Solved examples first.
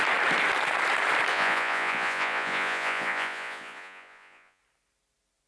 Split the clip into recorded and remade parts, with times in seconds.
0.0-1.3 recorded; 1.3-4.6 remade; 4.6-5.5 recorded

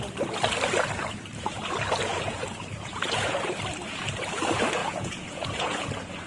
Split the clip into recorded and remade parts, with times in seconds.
0.0-2.1 recorded; 2.1-3.6 remade; 3.6-4.8 recorded; 4.8-5.8 remade; 5.8-6.3 recorded

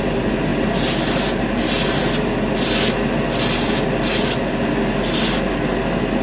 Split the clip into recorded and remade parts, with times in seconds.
0.0-6.2 recorded

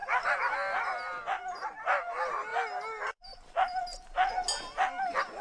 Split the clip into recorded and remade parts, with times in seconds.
0.0-5.4 recorded

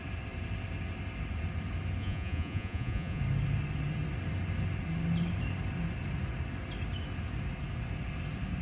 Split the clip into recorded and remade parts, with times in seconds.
0.0-2.0 recorded; 2.0-3.2 remade; 3.2-8.6 recorded

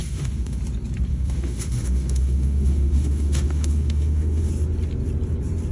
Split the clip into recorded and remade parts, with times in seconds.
0.0-0.6 remade; 0.6-1.1 recorded; 1.1-4.5 remade; 4.5-5.7 recorded

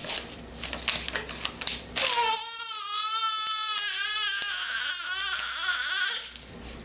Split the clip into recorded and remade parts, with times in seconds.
0.0-0.5 remade; 0.5-6.8 recorded